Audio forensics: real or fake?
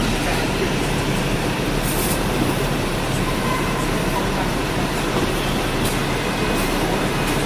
fake